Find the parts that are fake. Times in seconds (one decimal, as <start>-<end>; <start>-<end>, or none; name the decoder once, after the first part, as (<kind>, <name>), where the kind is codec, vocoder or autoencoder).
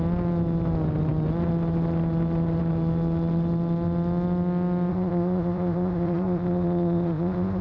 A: 4.9-7.6 (codec, ZipCodec)